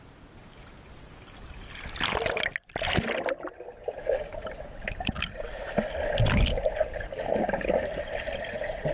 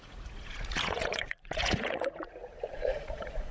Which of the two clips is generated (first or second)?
second